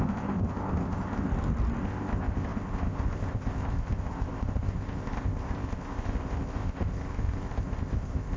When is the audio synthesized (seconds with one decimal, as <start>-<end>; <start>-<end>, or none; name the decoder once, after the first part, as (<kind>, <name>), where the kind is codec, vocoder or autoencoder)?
0.0-1.3 (codec, ZipCodec); 1.8-8.4